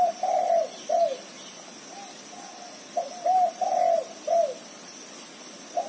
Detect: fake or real real